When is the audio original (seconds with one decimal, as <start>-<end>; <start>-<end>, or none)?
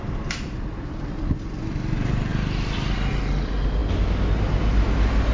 0.0-5.3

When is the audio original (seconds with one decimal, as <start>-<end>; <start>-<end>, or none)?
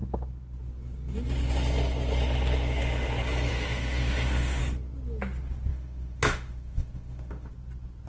0.0-3.5; 4.6-5.7; 7.5-8.1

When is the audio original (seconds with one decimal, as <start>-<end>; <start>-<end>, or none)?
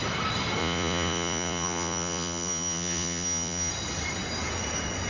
0.0-0.6; 3.7-5.1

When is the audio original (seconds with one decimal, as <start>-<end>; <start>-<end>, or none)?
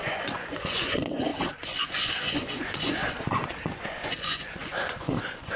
none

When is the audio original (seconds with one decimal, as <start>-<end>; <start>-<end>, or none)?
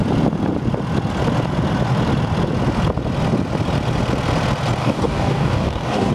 0.0-4.8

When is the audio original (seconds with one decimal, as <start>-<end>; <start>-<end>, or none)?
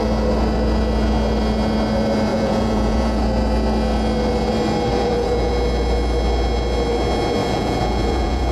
0.0-2.3; 3.2-4.9; 5.5-7.4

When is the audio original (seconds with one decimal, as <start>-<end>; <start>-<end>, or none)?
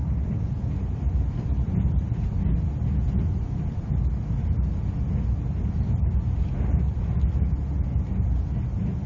0.0-9.1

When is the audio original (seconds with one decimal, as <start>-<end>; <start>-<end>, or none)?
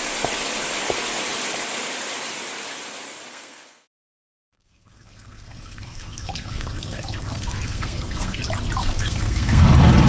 0.0-3.3; 8.4-8.8; 9.6-10.1